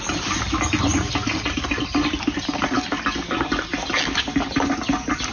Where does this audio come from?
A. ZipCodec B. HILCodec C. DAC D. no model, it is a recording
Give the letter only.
D